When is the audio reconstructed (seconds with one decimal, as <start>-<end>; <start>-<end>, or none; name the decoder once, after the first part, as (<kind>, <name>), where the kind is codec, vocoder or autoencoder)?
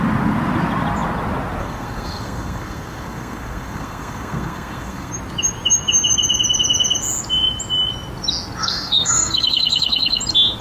1.6-5.1 (codec, SNAC); 8.6-10.2